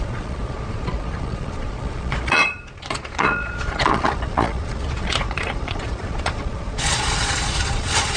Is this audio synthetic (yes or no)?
yes